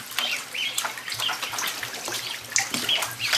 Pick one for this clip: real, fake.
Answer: real